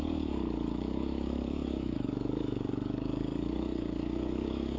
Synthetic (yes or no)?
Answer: yes